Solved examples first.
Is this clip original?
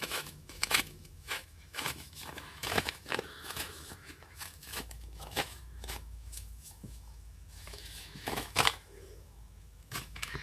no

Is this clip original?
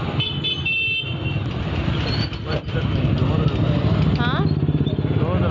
yes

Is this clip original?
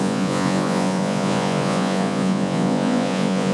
no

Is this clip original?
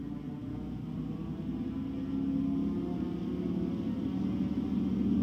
yes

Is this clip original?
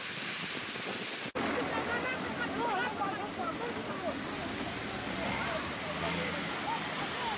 yes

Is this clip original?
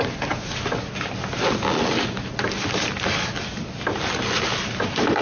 yes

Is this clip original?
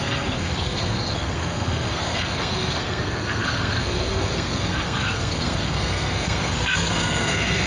no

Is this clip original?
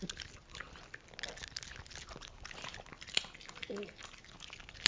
yes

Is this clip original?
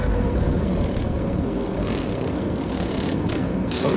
no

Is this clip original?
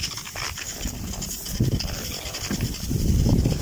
yes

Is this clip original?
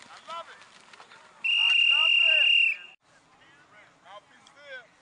yes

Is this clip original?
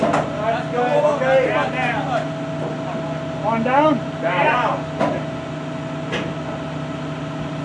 yes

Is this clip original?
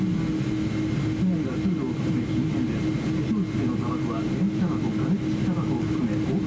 yes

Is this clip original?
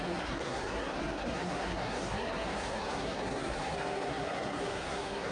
no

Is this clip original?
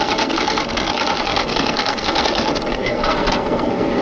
no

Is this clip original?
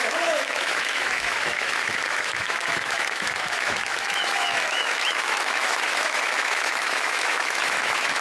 no